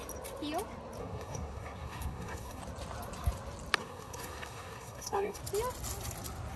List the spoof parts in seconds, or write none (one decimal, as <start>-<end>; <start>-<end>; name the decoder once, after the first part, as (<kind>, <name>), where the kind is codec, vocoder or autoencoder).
1.0-2.6 (codec, SNAC); 3.8-5.4